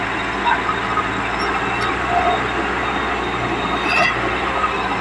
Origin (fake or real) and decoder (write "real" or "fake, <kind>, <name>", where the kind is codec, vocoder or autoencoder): real